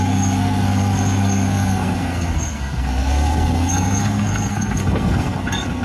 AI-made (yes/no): yes